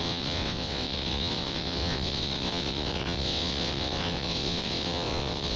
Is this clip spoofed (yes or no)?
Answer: yes